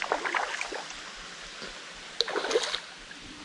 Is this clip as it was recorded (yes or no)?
yes